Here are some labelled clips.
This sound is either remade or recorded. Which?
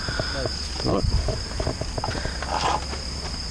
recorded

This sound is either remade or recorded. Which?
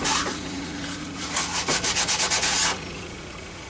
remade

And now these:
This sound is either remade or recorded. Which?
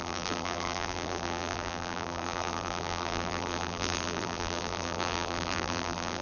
remade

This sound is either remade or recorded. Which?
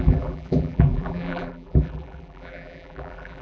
remade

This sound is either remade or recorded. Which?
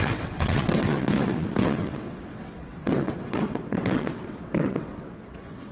remade